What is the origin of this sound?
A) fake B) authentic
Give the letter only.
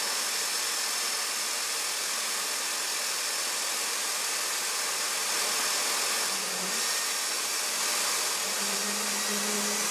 B